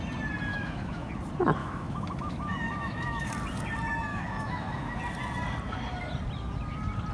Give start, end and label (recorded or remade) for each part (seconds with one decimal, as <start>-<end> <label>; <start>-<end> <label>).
0.0-0.5 recorded; 0.5-1.1 remade; 1.1-1.6 recorded; 1.6-3.3 remade; 3.3-4.1 recorded; 4.1-5.0 remade; 5.0-7.1 recorded